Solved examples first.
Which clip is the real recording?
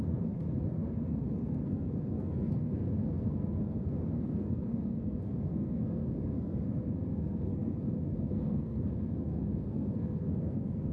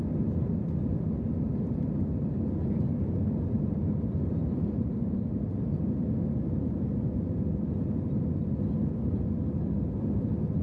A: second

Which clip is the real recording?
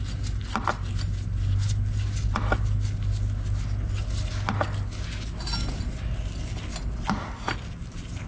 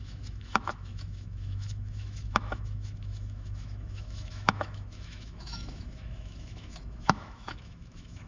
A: first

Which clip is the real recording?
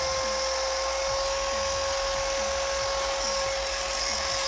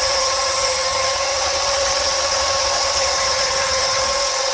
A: first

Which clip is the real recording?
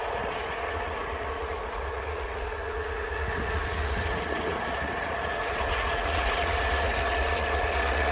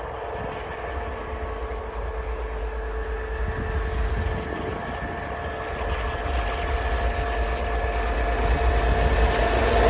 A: second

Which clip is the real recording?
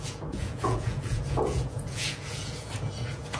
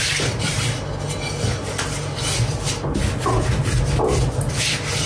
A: second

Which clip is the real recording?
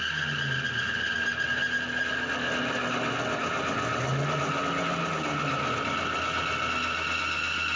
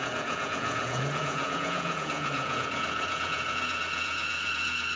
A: first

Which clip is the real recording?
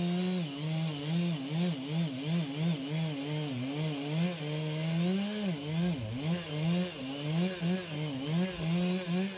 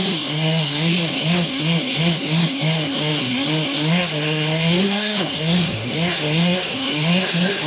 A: first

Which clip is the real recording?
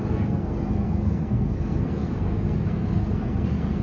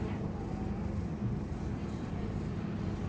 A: second